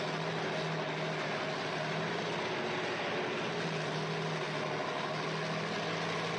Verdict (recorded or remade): recorded